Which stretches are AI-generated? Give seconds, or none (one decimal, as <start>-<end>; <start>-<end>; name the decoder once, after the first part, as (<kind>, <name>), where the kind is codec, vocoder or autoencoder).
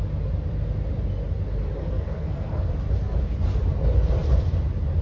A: 1.8-2.7 (codec, SNAC)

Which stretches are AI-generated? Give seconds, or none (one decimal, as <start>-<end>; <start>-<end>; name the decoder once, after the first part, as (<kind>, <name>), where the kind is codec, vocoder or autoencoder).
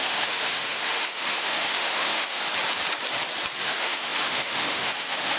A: 0.0-2.4 (autoencoder, DAC-VAE); 3.6-5.4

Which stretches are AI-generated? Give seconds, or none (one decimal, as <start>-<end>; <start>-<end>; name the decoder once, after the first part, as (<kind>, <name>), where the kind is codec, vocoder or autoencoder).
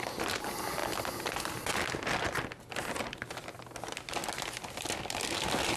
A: none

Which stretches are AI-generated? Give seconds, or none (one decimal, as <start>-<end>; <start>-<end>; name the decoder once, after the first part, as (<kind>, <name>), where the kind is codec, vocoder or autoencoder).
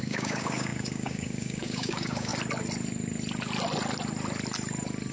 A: 0.0-2.3 (codec, DAC)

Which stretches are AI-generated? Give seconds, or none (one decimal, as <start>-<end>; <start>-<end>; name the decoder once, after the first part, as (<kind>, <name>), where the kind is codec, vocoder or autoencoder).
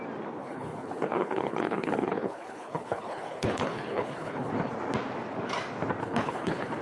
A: 0.4-4.5 (codec, HILCodec); 6.0-6.8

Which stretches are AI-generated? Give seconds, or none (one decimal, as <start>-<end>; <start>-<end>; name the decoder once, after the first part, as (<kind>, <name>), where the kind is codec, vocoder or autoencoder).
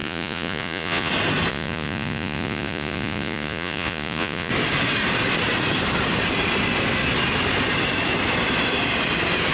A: 0.0-1.1 (vocoder, Vocos); 1.5-4.5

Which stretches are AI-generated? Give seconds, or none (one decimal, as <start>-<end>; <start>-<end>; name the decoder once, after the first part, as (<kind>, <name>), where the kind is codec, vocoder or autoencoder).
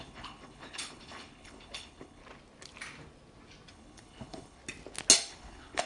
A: 0.0-2.2 (codec, HILCodec); 3.7-4.6; 5.3-5.9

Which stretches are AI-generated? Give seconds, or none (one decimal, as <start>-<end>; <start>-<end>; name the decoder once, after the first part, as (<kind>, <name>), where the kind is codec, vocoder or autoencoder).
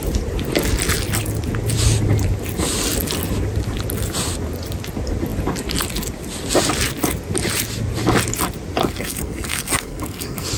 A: 8.8-10.6 (codec, SNAC)